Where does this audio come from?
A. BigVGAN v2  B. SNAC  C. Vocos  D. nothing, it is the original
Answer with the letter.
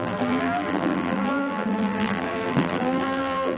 A